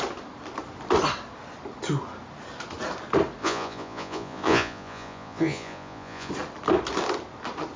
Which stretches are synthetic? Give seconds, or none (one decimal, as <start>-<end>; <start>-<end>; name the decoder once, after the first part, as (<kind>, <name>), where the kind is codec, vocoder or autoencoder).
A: 3.4-6.3 (vocoder, Vocos)